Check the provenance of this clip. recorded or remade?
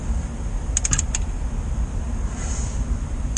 recorded